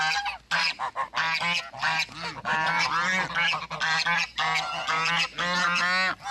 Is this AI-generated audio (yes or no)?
no